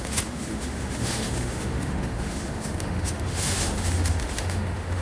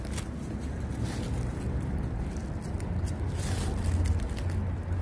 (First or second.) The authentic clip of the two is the second